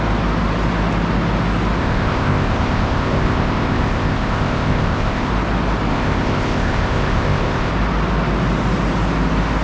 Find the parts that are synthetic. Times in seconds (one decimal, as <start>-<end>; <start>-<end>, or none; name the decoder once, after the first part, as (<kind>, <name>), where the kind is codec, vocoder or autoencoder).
1.8-5.3 (codec, ZipCodec); 5.9-7.7

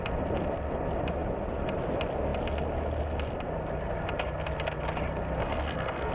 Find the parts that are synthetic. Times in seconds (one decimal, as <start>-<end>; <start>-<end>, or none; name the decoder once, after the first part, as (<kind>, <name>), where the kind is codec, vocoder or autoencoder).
5.4-6.1 (codec, SNAC)

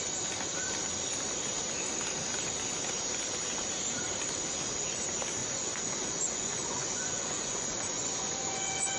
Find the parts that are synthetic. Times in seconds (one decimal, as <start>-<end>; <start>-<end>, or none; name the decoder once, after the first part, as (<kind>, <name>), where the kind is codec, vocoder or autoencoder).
5.4-9.0 (vocoder, Vocos)

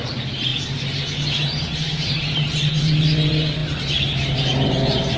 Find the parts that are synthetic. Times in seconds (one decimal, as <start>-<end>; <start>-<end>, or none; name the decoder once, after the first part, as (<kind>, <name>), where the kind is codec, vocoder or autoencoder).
0.0-5.2 (vocoder, BigVGAN v2)

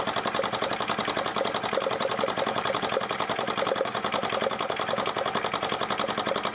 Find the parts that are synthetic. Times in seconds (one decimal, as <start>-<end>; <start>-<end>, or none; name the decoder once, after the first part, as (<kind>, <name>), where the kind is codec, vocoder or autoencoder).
none

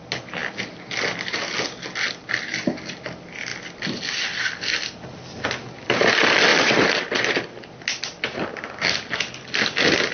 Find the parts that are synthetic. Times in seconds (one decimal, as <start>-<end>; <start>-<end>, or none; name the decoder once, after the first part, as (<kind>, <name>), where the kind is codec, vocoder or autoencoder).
none